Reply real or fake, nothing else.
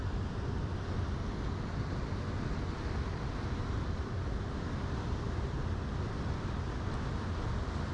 real